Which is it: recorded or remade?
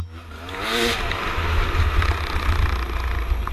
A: recorded